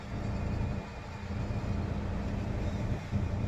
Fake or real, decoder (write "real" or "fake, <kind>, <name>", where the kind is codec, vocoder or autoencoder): real